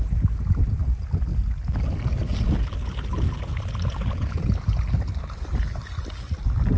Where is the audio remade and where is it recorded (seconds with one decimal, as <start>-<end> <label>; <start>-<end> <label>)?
0.0-6.8 recorded